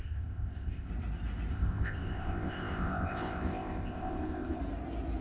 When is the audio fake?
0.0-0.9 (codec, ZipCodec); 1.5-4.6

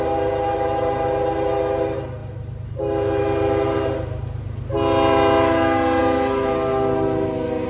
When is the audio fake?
none

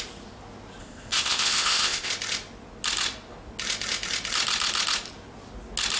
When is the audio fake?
0.8-2.1 (codec, ZipCodec)